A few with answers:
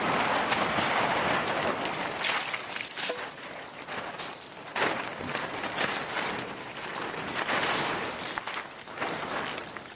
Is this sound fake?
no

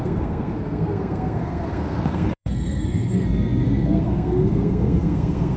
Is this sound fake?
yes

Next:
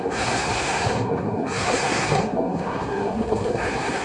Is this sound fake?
yes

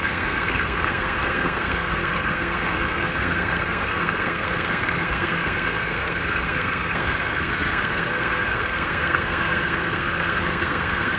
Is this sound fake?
yes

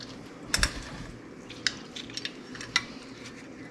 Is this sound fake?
no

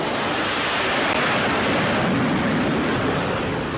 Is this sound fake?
no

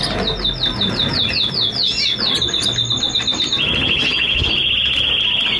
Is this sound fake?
no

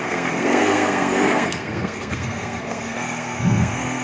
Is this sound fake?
yes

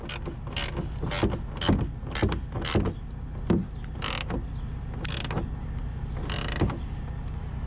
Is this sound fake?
no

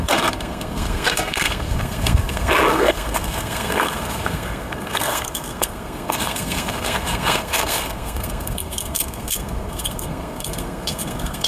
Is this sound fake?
yes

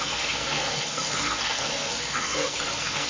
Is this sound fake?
yes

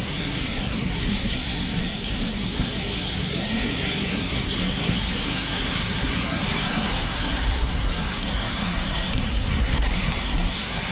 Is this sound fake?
yes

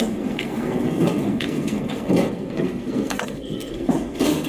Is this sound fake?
yes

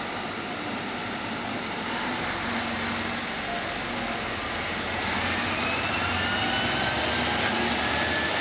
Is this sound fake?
no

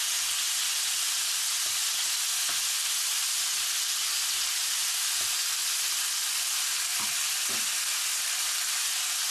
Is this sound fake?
no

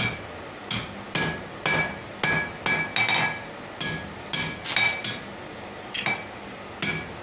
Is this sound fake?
no